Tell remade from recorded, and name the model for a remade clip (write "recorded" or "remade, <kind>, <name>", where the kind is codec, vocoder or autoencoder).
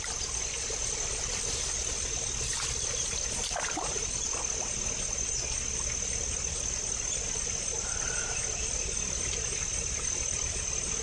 remade, vocoder, BigVGAN v2